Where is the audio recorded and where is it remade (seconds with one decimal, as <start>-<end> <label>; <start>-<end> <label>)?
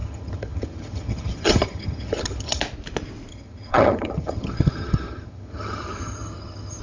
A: 0.0-2.6 remade; 2.6-3.3 recorded; 3.3-6.8 remade